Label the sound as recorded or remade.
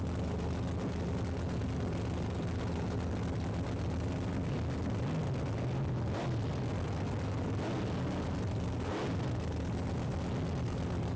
recorded